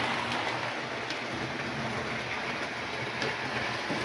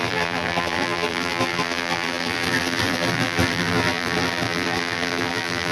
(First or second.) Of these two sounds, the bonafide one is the first